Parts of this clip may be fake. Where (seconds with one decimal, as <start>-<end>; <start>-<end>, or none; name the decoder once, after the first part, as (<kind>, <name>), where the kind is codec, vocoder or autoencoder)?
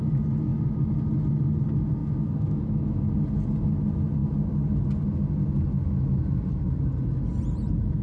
2.0-3.1 (autoencoder, DAC-VAE)